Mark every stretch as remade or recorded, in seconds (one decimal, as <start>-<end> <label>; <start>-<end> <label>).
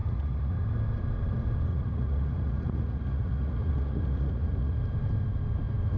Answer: 0.0-0.6 remade; 0.6-1.7 recorded; 1.7-4.8 remade; 4.8-6.0 recorded